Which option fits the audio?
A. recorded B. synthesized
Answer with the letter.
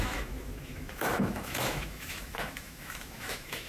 B